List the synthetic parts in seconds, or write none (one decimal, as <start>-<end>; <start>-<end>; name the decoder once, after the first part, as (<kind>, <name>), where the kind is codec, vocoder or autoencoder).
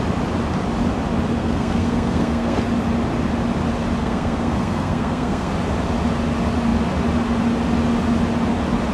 1.4-2.6 (codec, SNAC); 4.0-5.5